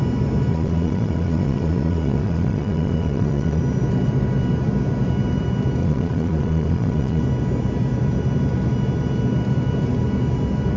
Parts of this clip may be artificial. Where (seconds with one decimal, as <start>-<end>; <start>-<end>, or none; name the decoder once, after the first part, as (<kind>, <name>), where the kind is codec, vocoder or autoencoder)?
0.5-3.6 (vocoder, Vocos); 5.8-7.2